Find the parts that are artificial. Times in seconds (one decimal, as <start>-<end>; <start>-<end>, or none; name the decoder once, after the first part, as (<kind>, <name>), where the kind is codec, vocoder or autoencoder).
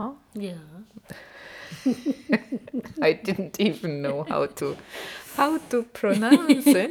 0.8-1.3 (autoencoder, DAC-VAE); 4.6-6.9